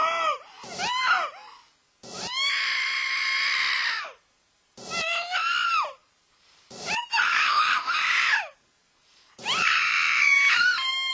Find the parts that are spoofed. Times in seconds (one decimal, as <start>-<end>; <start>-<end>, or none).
6.0-11.1